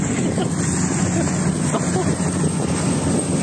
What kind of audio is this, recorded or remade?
recorded